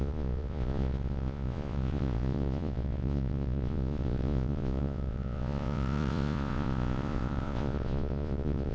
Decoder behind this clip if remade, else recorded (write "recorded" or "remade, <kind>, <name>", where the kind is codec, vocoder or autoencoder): remade, vocoder, Vocos